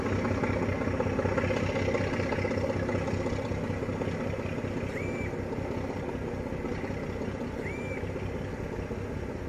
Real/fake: real